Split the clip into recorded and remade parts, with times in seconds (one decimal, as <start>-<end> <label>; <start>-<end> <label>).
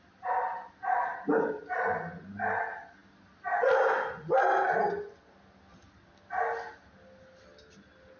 0.0-8.2 recorded